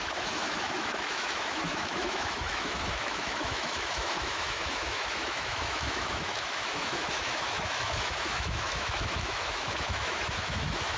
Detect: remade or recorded remade